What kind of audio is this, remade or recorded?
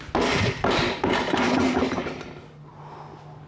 recorded